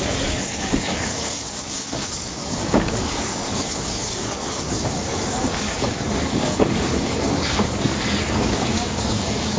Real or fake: fake